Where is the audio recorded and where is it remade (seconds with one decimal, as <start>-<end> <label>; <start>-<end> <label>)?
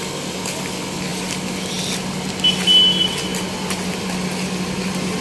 0.0-5.2 recorded